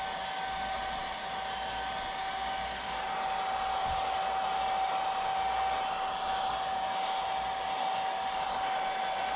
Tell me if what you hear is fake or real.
real